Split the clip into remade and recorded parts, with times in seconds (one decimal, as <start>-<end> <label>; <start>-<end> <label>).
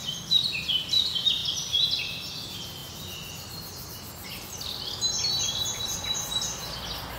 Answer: 0.0-7.2 recorded